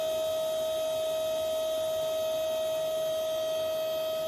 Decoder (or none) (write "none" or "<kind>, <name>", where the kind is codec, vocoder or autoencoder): none